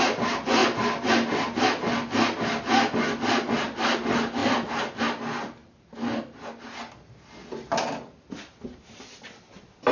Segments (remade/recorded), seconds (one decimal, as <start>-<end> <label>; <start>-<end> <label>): 0.0-9.9 recorded